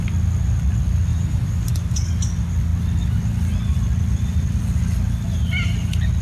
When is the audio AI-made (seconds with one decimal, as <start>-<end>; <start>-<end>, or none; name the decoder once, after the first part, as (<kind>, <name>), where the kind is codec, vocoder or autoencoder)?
1.1-1.7 (vocoder, BigVGAN v2)